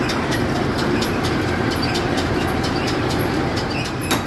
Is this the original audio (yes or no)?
no